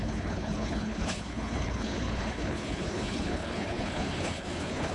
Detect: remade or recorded remade